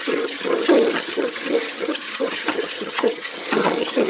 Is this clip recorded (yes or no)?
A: no